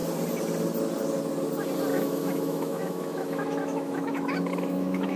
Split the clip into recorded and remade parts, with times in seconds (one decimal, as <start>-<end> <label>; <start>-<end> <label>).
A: 0.0-1.9 recorded; 1.9-5.2 remade